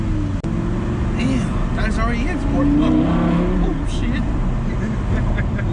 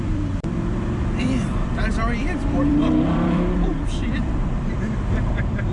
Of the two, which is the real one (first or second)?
first